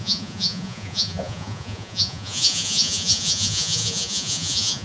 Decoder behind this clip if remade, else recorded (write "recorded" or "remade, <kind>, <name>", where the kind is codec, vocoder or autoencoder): remade, vocoder, Vocos